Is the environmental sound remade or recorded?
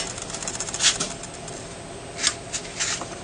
recorded